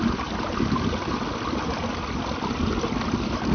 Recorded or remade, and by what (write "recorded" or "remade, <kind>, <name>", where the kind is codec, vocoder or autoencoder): recorded